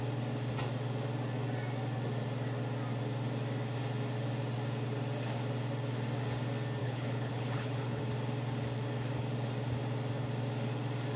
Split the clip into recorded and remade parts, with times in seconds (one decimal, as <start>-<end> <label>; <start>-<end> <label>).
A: 0.0-6.8 recorded; 6.8-8.0 remade; 8.0-11.2 recorded